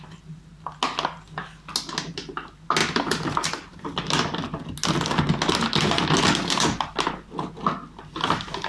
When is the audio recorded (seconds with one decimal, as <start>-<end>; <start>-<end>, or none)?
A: 0.0-8.7